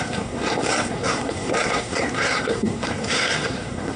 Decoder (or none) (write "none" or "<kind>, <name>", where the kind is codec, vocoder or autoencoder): codec, SNAC